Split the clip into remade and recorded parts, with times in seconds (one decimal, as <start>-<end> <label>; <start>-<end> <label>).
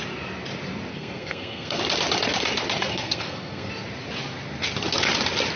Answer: 0.0-0.9 recorded; 0.9-1.8 remade; 1.8-2.9 recorded; 2.9-3.7 remade; 3.7-5.6 recorded